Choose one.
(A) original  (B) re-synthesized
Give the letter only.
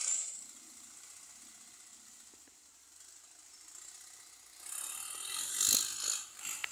A